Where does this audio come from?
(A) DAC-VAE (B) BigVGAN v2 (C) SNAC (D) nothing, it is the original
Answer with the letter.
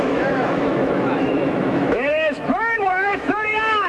A